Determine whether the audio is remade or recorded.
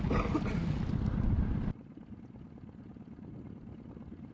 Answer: recorded